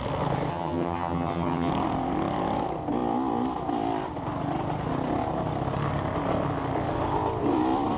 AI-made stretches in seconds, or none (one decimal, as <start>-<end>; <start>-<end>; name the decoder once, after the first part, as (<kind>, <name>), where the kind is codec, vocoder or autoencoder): 0.5-1.7 (vocoder, HiFi-GAN)